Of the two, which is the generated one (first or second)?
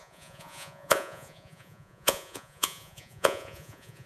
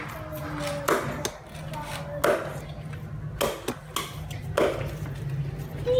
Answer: first